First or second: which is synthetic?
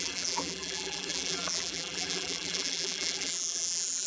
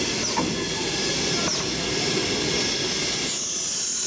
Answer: first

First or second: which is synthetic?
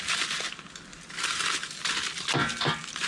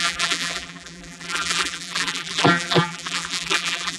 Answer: second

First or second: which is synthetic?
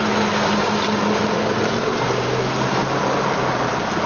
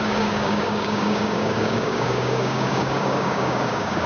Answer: second